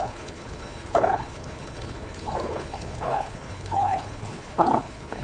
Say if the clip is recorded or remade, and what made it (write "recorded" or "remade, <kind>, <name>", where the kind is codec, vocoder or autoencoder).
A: remade, codec, HILCodec